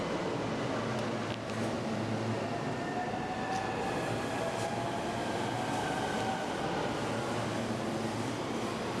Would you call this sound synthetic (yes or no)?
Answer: no